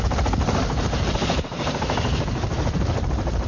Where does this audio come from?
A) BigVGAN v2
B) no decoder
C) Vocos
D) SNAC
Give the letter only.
A